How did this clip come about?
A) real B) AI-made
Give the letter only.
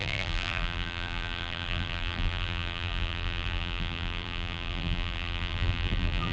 B